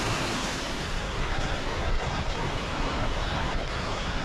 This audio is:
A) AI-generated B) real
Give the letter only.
A